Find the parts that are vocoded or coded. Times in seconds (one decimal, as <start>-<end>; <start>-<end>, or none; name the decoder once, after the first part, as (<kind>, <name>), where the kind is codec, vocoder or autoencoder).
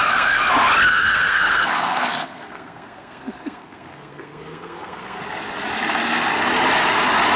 0.0-0.5 (codec, SNAC); 0.9-5.2